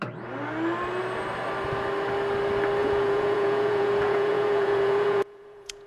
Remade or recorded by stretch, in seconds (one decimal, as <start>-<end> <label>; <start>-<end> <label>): 0.0-2.8 recorded; 2.8-5.9 remade